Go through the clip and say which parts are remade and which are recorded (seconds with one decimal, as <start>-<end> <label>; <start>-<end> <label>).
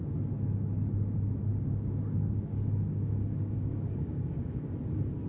0.0-1.5 recorded; 1.5-4.7 remade; 4.7-5.3 recorded